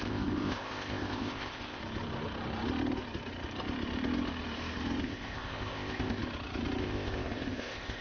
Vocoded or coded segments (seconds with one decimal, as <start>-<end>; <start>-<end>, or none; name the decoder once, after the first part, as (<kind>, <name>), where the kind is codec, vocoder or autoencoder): 0.0-1.8 (codec, ZipCodec); 5.0-6.2; 6.8-8.0